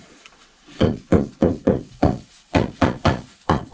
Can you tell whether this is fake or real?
fake